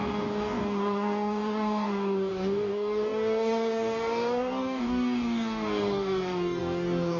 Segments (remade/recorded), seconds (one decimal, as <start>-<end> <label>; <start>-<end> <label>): 0.0-7.2 remade